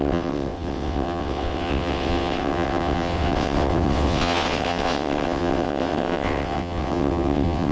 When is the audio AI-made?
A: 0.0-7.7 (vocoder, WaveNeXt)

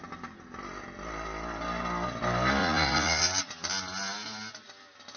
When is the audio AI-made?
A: 2.6-3.2 (vocoder, Vocos)